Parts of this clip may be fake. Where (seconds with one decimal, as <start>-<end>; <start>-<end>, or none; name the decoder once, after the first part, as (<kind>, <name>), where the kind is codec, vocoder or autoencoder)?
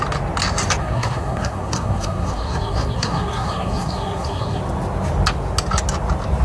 0.8-4.6 (codec, SNAC)